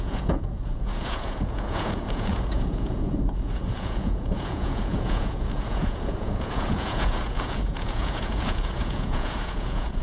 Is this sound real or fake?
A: fake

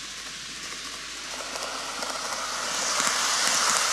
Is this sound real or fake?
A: real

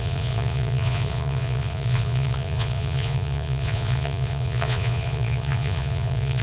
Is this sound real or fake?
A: fake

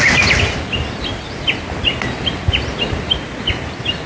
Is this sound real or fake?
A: real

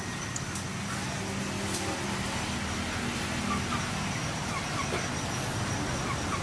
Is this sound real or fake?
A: real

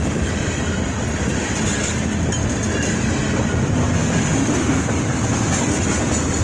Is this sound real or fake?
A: real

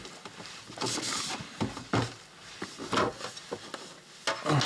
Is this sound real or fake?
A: real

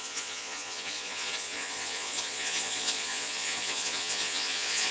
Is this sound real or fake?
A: fake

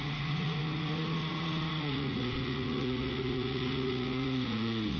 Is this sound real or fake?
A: fake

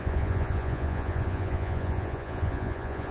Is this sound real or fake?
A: fake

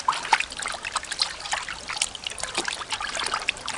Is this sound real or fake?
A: real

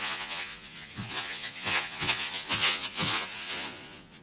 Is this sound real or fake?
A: fake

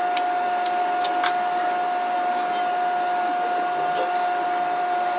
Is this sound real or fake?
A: real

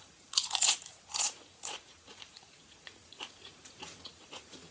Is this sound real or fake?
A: fake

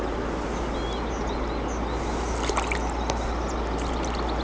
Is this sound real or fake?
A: real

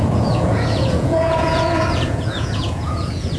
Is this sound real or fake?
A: fake